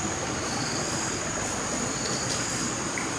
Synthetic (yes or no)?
no